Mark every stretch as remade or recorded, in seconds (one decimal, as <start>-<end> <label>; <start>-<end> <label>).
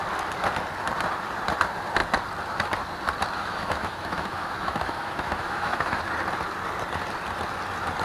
0.0-3.4 recorded; 3.4-6.0 remade; 6.0-8.0 recorded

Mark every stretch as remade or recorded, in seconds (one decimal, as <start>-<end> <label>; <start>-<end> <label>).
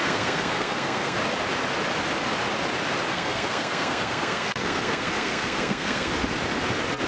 0.0-1.2 remade; 1.2-3.1 recorded; 3.1-6.1 remade; 6.1-7.1 recorded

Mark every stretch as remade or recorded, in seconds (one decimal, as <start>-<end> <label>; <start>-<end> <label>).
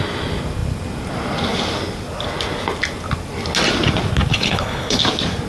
0.0-4.3 recorded; 4.3-5.0 remade; 5.0-5.5 recorded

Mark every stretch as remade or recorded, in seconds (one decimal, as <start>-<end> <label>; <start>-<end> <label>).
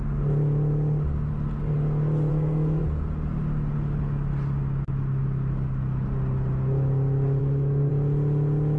0.0-2.3 recorded; 2.3-2.8 remade; 2.8-7.4 recorded; 7.4-7.9 remade; 7.9-8.8 recorded